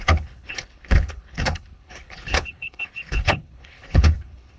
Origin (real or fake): fake